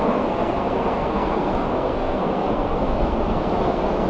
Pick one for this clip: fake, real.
fake